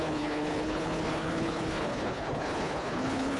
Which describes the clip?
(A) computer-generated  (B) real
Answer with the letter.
A